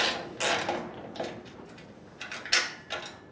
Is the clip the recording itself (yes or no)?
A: yes